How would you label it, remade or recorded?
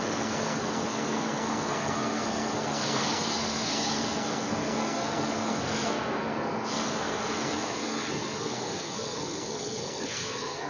remade